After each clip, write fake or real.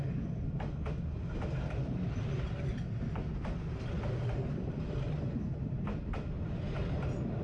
real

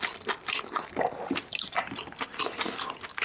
real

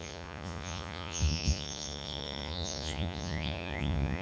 fake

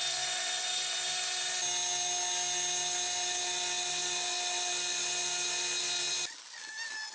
real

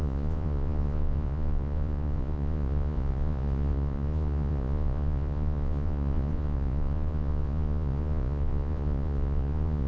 fake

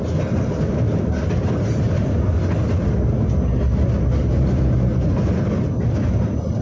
real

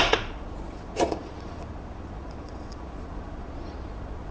fake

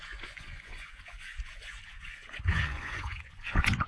fake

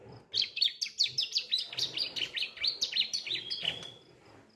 real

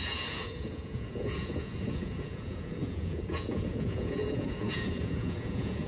fake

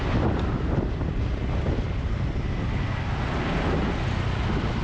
real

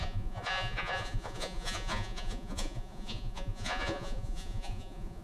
fake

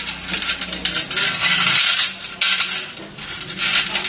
real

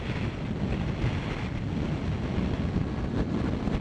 real